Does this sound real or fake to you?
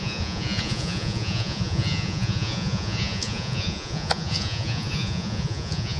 fake